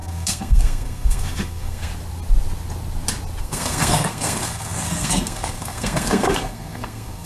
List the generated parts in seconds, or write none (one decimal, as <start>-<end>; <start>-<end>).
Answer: 0.0-1.9; 3.4-7.3